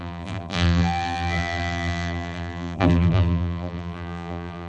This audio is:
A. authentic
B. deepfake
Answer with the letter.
B